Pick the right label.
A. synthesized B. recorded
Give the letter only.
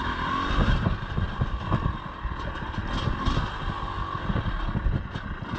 B